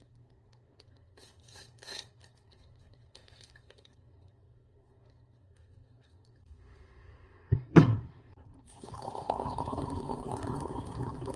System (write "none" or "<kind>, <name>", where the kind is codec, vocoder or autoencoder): codec, SNAC